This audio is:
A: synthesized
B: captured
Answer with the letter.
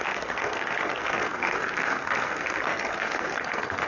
A